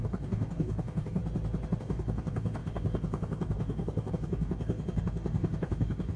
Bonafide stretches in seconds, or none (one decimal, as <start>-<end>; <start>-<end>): 1.2-1.8